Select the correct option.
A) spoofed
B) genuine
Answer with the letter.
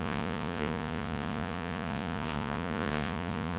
A